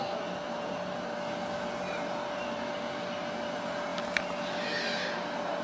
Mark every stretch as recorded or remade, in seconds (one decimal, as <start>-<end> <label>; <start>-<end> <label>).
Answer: 0.0-5.6 recorded